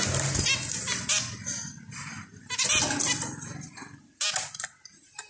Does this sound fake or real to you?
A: real